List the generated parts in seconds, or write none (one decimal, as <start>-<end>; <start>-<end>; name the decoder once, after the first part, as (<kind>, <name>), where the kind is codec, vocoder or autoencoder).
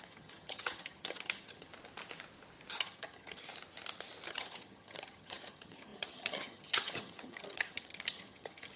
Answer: 0.0-1.7 (vocoder, HiFi-GAN); 2.7-3.5; 4.3-8.8